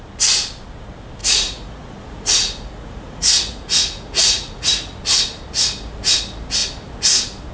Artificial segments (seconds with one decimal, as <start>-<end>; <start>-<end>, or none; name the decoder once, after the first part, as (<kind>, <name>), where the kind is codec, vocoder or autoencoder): 1.2-4.7 (vocoder, Vocos)